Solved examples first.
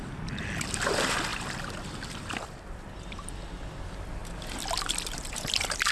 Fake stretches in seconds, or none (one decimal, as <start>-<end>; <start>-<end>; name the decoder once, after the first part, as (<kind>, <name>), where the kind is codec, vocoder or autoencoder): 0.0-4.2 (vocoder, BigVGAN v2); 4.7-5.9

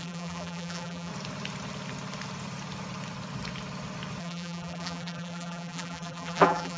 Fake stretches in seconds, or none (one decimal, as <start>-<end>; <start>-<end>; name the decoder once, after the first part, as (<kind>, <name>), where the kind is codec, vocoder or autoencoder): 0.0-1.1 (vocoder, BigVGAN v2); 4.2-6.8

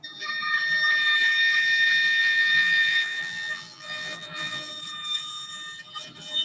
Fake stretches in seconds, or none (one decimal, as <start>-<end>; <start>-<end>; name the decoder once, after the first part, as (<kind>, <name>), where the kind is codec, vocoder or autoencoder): 2.2-4.7 (vocoder, BigVGAN v2)

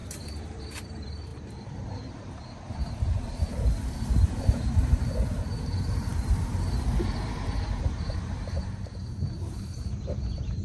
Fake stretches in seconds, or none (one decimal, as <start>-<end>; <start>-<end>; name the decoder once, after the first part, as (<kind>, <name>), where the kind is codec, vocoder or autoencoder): 0.0-10.6 (vocoder, BigVGAN v2)

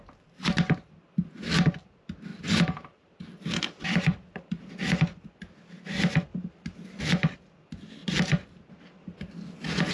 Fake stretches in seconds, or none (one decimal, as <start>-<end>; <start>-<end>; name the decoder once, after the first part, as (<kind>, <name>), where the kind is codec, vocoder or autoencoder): 2.3-4.7 (vocoder, BigVGAN v2)

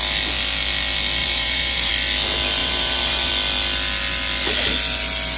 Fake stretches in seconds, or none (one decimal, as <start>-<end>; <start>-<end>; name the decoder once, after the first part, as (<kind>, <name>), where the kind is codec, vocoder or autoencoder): 1.2-1.9 (vocoder, BigVGAN v2); 2.6-3.3

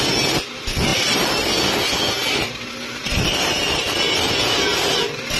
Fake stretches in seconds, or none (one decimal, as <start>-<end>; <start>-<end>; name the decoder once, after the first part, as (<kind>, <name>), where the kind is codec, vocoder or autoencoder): 0.9-1.5 (vocoder, BigVGAN v2); 2.4-4.3